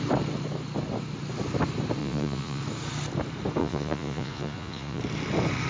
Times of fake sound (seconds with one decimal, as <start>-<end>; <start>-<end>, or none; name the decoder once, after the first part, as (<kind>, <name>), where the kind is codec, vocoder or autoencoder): 2.0-2.6 (vocoder, Vocos); 3.6-5.0